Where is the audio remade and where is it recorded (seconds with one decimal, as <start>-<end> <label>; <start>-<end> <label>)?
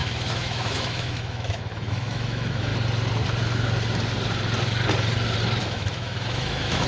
0.0-2.7 remade; 2.7-5.6 recorded; 5.6-6.9 remade